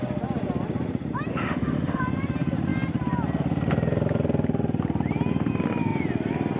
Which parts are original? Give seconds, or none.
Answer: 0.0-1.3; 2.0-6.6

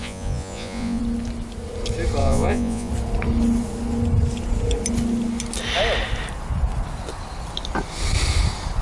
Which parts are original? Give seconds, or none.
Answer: 1.0-2.2; 2.9-8.8

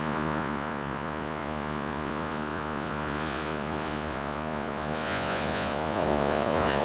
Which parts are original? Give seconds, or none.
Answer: none

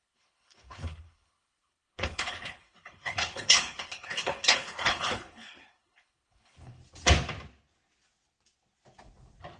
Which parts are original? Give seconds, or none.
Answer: 6.8-9.6

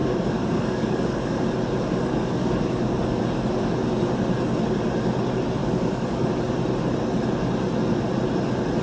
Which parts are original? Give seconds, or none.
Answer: 1.4-2.1; 3.2-5.6; 6.3-8.8